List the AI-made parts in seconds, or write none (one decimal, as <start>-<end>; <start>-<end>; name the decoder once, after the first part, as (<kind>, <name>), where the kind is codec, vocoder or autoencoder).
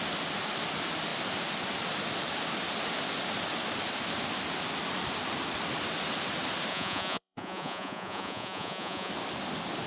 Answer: 6.7-9.1 (vocoder, Vocos)